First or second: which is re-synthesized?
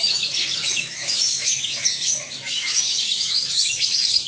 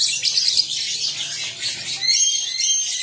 first